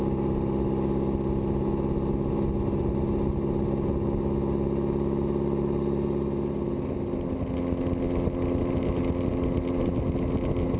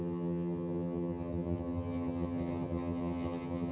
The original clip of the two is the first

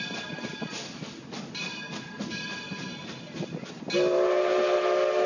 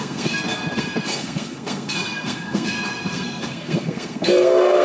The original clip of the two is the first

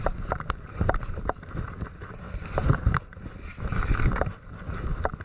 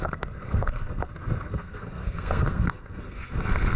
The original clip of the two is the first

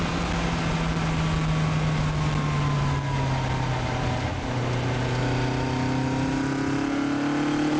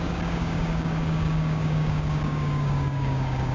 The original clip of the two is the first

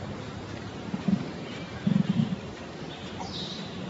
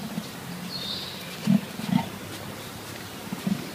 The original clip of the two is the second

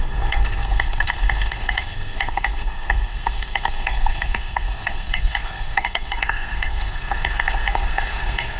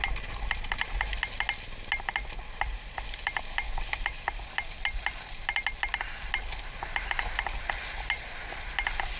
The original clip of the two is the second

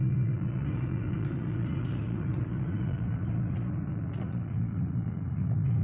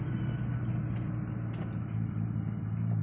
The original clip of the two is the second